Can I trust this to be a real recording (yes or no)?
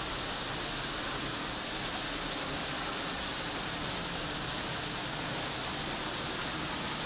yes